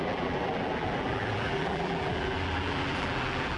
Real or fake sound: fake